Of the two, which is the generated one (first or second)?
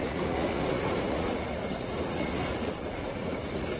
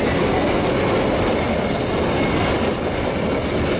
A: first